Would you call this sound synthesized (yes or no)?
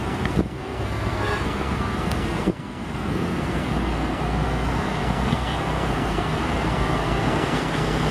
yes